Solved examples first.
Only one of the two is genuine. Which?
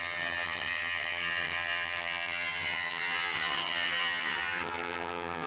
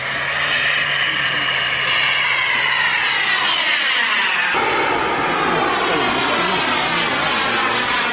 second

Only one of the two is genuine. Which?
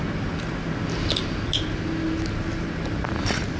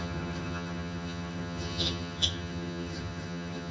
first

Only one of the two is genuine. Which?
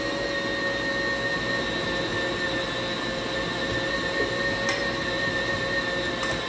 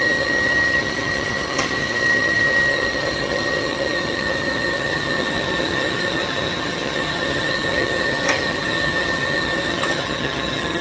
first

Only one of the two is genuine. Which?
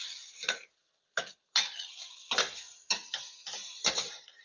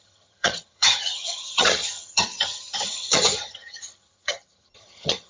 first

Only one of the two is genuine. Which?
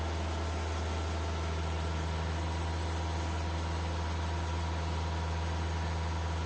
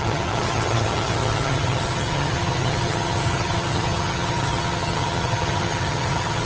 first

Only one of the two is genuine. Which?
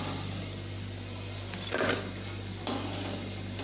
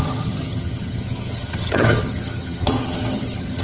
first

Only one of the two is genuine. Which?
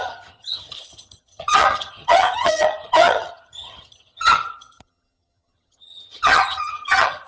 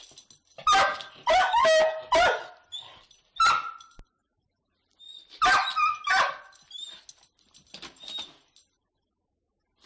second